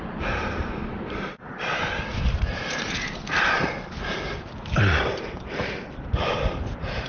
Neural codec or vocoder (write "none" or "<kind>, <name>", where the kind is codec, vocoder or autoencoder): vocoder, BigVGAN v2